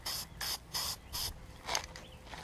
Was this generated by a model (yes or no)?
no